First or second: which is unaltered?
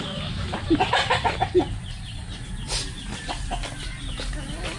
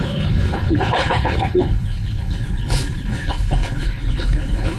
first